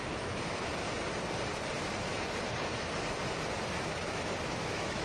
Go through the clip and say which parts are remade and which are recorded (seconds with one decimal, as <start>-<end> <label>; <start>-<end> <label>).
0.0-0.8 remade; 0.8-3.8 recorded; 3.8-5.0 remade